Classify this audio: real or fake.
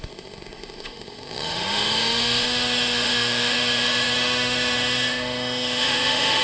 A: fake